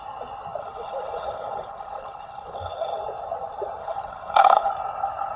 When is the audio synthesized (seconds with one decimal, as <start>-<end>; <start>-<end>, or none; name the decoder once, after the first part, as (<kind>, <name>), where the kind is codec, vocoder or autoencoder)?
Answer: 0.6-3.0 (codec, HILCodec); 3.8-4.7